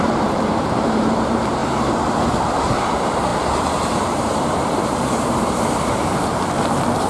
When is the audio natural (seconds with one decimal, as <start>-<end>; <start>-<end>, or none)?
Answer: none